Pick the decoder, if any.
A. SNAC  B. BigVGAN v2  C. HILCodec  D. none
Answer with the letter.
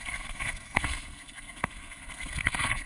A